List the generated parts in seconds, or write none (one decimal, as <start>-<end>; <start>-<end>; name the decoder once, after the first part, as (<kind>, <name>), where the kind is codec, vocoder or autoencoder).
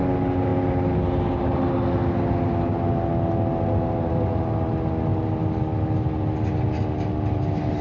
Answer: none